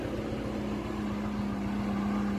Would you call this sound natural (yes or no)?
yes